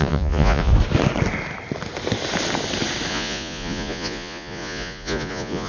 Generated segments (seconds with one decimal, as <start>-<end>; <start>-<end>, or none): 0.0-0.7; 3.1-5.7

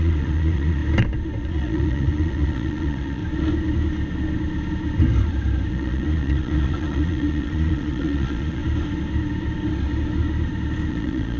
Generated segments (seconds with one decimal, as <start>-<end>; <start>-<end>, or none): 0.0-0.8; 1.4-3.2; 5.7-8.6; 10.9-11.4

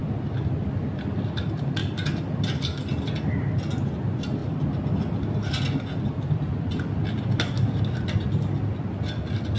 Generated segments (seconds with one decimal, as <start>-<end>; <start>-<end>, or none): none

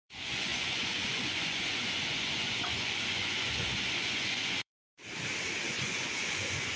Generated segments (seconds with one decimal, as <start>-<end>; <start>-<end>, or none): 0.0-5.0; 5.7-6.8